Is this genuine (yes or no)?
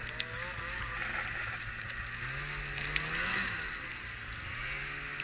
yes